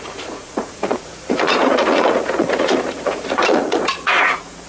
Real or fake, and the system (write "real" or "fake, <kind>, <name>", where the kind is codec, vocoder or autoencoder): fake, vocoder, Vocos